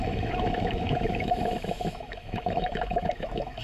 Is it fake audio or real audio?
fake